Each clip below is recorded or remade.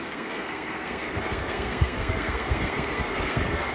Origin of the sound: remade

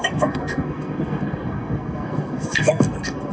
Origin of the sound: remade